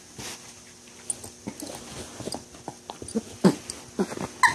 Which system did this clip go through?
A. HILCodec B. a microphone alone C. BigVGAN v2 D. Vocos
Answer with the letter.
B